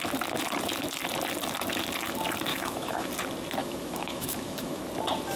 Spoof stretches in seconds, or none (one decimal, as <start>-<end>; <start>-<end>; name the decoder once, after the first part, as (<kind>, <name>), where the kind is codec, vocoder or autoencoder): 2.5-3.1 (autoencoder, DAC-VAE); 3.6-4.8